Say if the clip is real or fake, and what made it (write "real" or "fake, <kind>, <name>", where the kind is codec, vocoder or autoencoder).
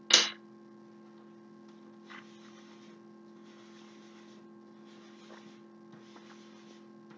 real